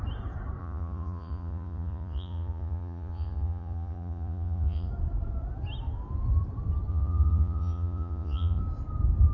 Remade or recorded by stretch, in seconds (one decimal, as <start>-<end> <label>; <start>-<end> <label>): 0.0-0.6 recorded; 0.6-4.9 remade; 4.9-6.9 recorded; 6.9-8.6 remade; 8.6-9.3 recorded